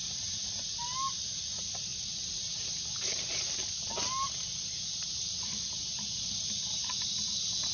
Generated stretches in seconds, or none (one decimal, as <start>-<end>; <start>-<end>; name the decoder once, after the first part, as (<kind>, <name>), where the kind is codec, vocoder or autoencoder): none